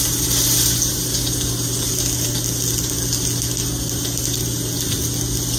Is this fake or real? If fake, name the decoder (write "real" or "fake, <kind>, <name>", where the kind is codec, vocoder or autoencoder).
real